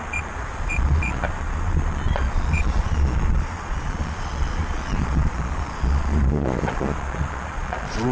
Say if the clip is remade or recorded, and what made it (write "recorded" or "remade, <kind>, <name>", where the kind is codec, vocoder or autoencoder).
remade, vocoder, Vocos